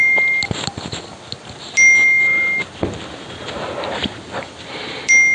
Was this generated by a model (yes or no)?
no